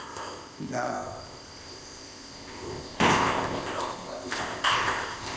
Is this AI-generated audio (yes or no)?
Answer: yes